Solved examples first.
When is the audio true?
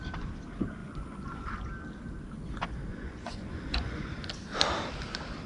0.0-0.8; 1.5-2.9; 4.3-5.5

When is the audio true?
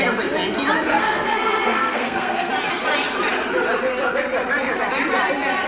0.0-0.9; 2.5-5.7